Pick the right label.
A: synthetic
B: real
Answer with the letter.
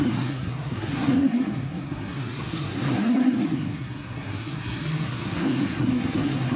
A